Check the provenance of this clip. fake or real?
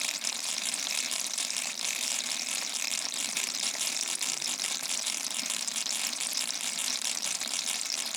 fake